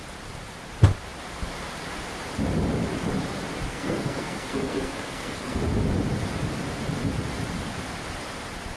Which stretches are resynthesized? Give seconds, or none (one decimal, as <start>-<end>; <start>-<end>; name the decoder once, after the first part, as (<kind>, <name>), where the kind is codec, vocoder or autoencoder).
3.7-5.6 (codec, SNAC)